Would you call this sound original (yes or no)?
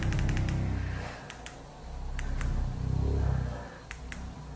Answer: yes